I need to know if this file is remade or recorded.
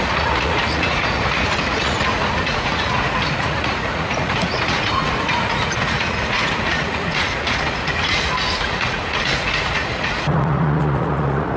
remade